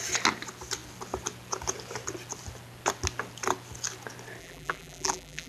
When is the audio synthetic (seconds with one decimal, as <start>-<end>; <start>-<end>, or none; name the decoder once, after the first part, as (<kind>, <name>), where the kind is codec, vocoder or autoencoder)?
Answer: 4.4-5.5 (vocoder, BigVGAN v2)